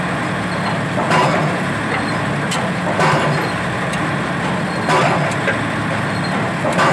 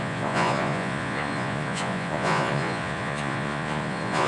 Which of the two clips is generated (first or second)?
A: second